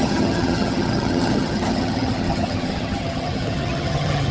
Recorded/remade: remade